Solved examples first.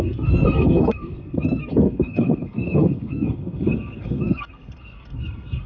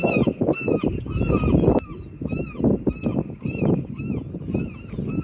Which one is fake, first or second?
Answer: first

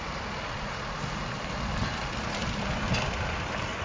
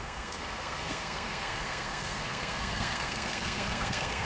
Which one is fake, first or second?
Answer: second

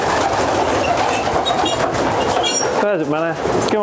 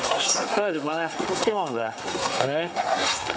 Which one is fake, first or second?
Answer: second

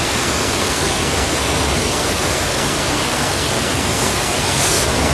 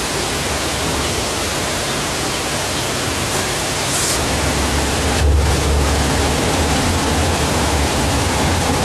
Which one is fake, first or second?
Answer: first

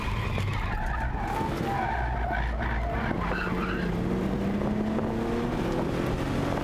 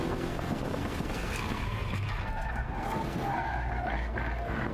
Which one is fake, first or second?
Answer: second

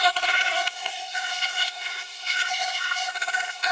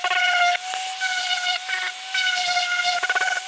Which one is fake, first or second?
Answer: first